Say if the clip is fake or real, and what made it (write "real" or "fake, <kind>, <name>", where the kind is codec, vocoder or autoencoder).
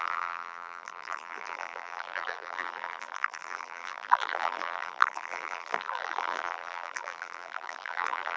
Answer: fake, vocoder, BigVGAN v2